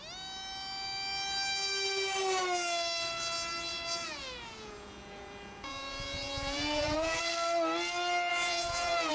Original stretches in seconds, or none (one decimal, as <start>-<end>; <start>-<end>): 0.0-3.7; 7.2-8.3